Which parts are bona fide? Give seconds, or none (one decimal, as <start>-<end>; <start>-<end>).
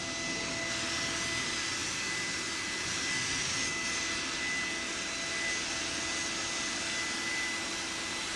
0.0-8.4